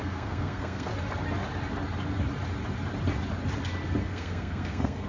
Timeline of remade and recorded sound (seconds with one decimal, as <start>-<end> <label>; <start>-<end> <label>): 0.0-0.9 remade; 0.9-4.0 recorded; 4.0-5.1 remade